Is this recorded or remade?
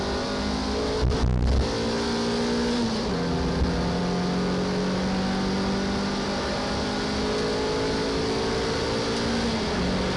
recorded